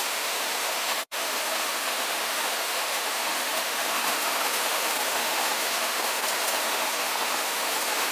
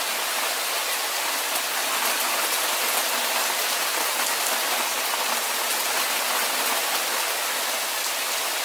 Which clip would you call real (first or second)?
second